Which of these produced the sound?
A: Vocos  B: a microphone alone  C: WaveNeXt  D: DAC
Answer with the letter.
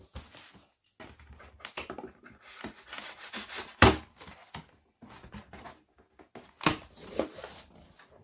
B